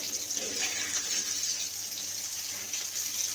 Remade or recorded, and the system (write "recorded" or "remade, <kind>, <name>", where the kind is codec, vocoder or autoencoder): recorded